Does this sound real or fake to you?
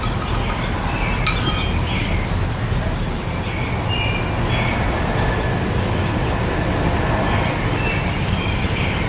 real